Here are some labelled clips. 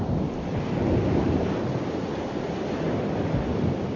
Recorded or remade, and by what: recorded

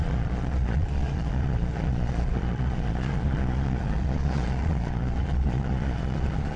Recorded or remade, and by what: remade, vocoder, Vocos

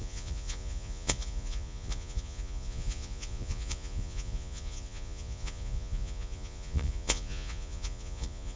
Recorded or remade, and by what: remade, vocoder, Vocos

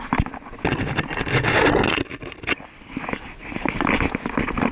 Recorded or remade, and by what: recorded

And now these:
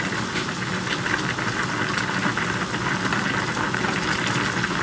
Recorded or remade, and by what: recorded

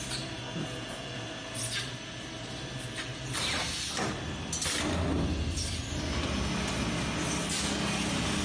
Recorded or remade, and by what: recorded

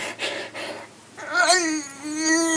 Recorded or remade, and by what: recorded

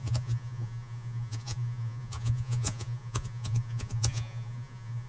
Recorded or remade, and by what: remade, vocoder, Vocos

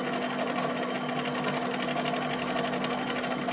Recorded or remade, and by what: recorded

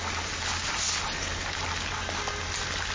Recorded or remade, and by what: recorded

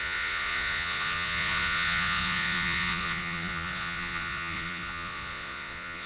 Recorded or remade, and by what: remade, vocoder, Vocos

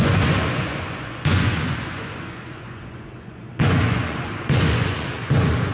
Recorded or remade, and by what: remade, vocoder, Vocos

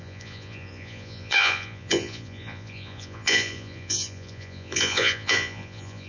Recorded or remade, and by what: remade, vocoder, Vocos